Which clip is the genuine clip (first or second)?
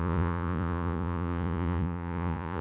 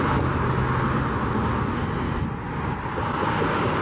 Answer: second